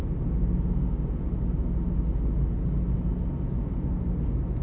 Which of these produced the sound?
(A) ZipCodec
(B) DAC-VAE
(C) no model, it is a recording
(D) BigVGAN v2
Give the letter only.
C